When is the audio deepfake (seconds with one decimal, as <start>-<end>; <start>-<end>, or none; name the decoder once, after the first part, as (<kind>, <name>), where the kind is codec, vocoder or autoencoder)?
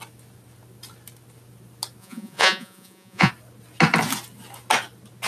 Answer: 2.0-3.3 (vocoder, Vocos)